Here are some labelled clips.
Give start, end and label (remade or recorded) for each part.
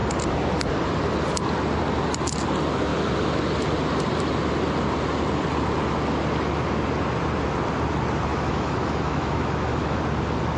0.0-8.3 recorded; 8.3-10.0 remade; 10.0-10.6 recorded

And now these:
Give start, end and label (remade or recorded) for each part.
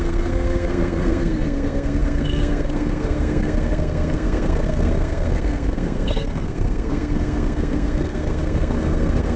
0.0-9.4 remade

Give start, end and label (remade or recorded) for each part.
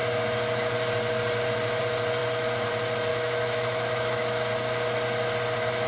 0.0-3.1 recorded; 3.1-4.5 remade; 4.5-5.9 recorded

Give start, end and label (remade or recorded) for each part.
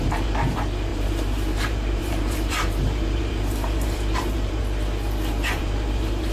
0.0-4.6 remade; 4.6-5.3 recorded; 5.3-6.3 remade